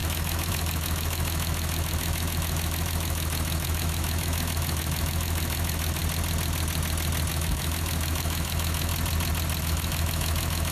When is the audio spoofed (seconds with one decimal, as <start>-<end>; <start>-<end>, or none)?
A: 0.0-6.0; 7.3-8.9; 9.6-10.7